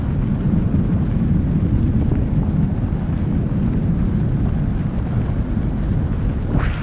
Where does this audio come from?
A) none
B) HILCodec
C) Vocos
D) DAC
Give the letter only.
A